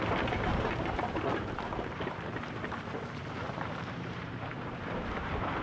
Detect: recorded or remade remade